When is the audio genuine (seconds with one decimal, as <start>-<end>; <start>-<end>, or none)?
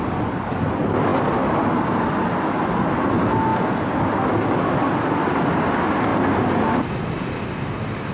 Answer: 0.0-8.1